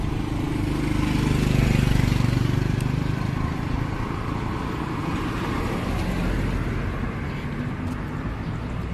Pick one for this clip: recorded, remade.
recorded